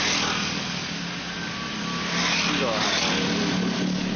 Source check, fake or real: real